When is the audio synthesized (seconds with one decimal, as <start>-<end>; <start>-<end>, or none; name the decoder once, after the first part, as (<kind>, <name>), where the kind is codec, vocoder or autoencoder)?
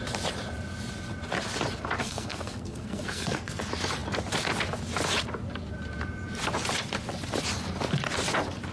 2.0-3.6 (codec, SNAC)